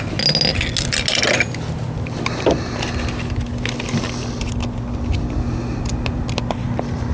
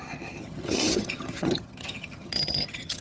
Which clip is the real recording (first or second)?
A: first